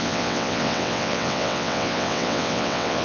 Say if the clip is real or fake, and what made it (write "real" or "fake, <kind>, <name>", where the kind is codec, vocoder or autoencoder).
fake, vocoder, WaveNeXt